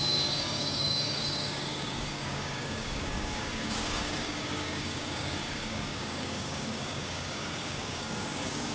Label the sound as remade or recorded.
remade